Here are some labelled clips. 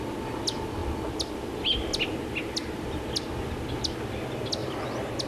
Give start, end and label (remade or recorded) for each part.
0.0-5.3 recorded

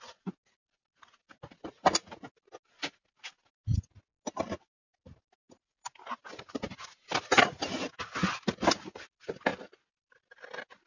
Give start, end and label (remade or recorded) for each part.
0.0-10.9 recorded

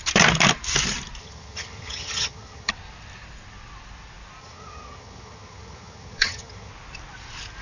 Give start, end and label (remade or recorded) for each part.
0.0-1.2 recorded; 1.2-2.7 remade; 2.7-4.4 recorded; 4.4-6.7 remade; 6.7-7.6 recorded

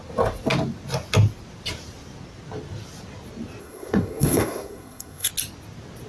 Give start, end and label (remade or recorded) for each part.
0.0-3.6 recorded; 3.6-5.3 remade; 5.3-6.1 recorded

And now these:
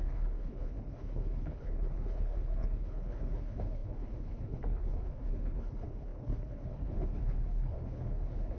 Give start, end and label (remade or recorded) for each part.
0.0-8.6 remade

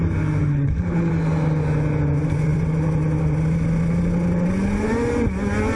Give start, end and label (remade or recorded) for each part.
0.0-0.4 recorded; 0.4-1.1 remade; 1.1-5.8 recorded

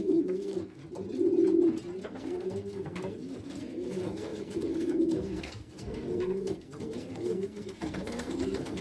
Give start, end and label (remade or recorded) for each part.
0.0-0.8 remade; 0.8-2.0 recorded; 2.0-8.8 remade